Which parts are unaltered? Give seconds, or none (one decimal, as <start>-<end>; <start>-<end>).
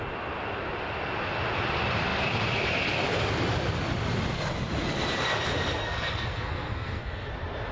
0.0-5.8; 7.3-7.7